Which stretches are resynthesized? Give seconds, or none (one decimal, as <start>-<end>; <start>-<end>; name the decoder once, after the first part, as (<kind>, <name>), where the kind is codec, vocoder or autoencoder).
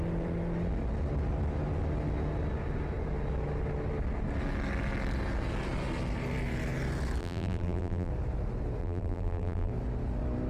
7.2-8.1 (vocoder, BigVGAN v2); 8.8-9.7